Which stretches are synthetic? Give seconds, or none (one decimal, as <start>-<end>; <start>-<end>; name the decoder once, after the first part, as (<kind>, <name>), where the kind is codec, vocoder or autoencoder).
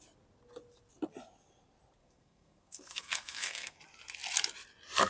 2.0-3.8 (codec, SNAC)